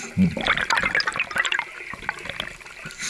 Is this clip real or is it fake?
real